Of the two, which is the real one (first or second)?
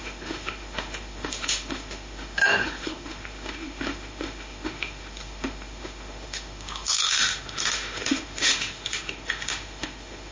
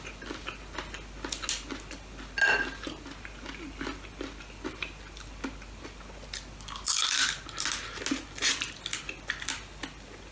second